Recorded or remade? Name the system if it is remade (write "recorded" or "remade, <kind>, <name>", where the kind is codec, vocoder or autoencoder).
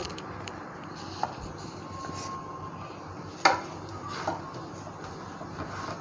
recorded